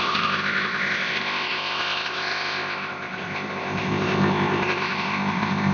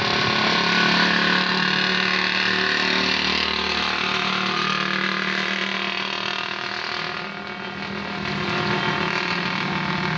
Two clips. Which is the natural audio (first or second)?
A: second